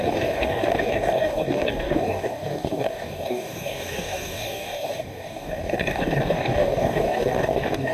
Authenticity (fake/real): fake